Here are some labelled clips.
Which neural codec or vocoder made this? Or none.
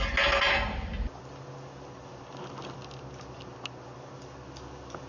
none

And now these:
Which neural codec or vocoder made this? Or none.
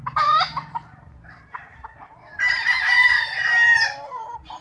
vocoder, BigVGAN v2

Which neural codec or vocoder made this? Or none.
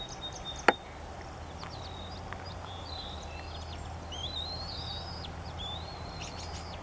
none